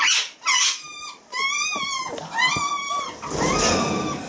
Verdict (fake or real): real